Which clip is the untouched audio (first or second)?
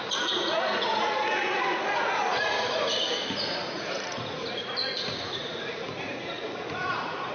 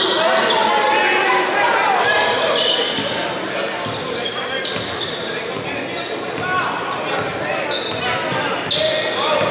second